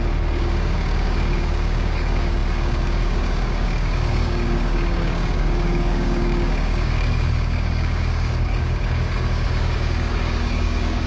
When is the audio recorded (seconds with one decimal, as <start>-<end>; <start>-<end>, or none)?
none